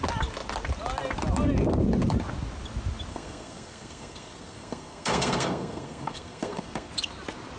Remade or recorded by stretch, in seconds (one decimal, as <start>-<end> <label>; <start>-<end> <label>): 0.0-3.1 recorded; 3.1-6.9 remade; 6.9-7.6 recorded